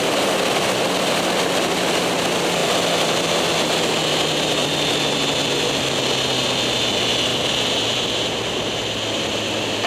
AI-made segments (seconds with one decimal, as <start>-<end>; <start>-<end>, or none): 7.3-8.7